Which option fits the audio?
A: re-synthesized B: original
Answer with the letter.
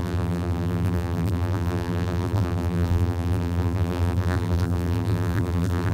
A